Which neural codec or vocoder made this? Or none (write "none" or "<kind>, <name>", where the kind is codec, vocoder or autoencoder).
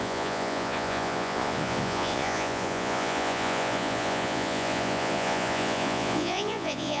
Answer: vocoder, Vocos